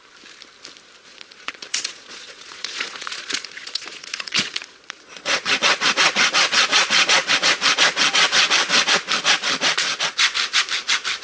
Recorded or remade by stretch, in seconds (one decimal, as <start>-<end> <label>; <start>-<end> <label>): 0.0-1.1 recorded; 1.1-5.9 remade; 5.9-6.7 recorded; 6.7-7.3 remade; 7.3-11.2 recorded

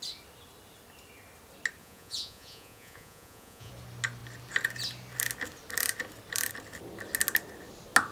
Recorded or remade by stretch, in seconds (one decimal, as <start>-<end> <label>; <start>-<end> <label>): 0.0-1.8 recorded; 1.8-3.7 remade; 3.7-8.1 recorded

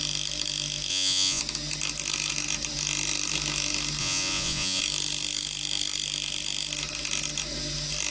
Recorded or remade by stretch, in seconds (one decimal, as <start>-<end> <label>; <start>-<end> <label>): 0.0-0.9 recorded; 0.9-1.4 remade; 1.4-4.0 recorded; 4.0-4.8 remade; 4.8-8.1 recorded

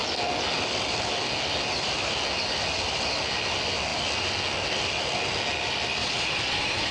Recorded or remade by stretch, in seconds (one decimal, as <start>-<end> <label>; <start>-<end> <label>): 0.0-6.0 recorded; 6.0-6.9 remade

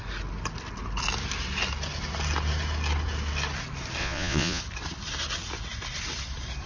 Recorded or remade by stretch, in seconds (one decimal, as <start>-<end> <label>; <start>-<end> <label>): 0.0-4.0 recorded; 4.0-4.6 remade; 4.6-6.7 recorded